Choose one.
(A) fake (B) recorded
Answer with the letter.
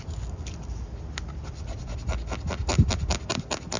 B